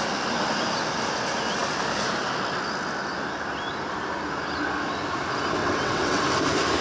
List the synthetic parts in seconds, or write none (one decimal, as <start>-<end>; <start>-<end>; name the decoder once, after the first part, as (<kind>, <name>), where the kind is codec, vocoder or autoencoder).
5.6-6.2 (vocoder, WaveNeXt)